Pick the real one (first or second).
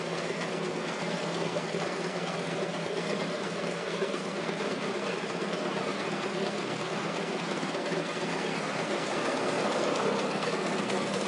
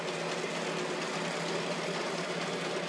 second